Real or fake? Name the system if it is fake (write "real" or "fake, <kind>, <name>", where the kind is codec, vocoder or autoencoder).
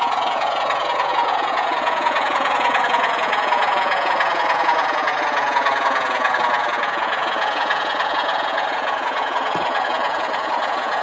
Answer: fake, vocoder, Vocos